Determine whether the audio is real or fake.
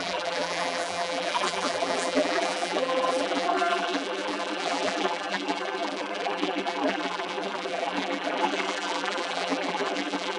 fake